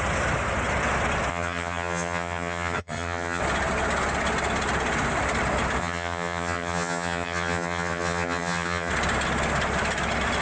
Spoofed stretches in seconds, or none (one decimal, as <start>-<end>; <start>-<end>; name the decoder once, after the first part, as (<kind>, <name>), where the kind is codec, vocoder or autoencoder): 1.3-3.4 (vocoder, HiFi-GAN); 5.8-8.9